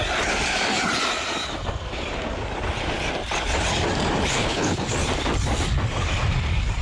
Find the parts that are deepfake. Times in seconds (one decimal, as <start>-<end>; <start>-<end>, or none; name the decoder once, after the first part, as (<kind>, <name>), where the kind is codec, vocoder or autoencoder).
4.3-4.8 (codec, HILCodec)

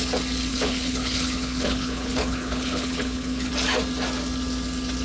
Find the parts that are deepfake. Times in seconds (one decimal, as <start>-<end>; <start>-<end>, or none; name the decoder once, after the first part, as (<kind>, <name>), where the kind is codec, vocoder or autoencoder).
0.5-3.5 (codec, HILCodec)

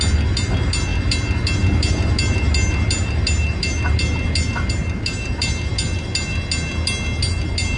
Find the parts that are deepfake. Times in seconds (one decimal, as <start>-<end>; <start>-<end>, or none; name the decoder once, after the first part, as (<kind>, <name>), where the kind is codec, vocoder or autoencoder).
none

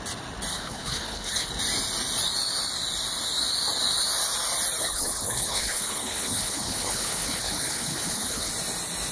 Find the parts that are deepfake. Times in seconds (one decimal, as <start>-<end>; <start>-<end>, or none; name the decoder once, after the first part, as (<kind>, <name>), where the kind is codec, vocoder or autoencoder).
0.5-1.5 (codec, HILCodec); 4.8-8.5

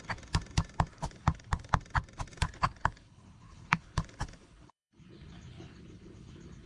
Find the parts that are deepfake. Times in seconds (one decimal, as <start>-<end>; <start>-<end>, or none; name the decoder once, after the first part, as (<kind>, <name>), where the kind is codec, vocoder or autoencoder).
0.9-1.7 (codec, HILCodec); 2.4-6.7

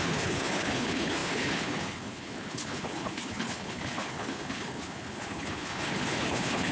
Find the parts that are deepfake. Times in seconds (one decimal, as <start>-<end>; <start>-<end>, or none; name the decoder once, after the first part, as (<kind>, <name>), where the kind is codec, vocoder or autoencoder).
0.0-6.7 (codec, HILCodec)